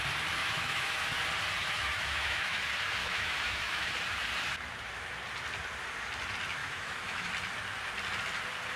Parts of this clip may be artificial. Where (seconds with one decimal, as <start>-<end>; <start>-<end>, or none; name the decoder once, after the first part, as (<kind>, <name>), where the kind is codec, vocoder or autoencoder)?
0.4-1.2 (autoencoder, DAC-VAE); 1.6-2.6; 3.0-3.9; 6.6-7.3